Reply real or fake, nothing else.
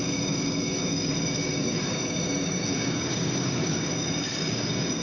fake